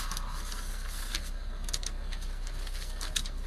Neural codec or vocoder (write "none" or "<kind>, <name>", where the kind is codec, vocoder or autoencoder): codec, SNAC